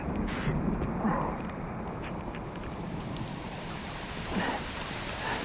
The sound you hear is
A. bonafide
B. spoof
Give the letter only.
B